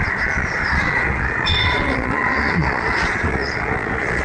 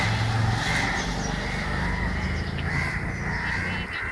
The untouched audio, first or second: second